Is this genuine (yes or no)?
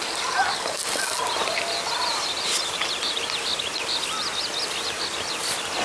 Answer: yes